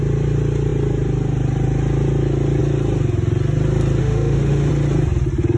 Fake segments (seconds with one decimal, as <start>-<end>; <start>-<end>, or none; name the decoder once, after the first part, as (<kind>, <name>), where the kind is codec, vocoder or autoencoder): 4.0-4.7 (autoencoder, DAC-VAE)